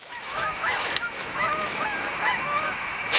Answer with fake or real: fake